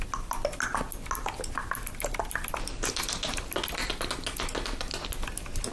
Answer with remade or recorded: recorded